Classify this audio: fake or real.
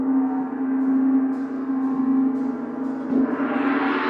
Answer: real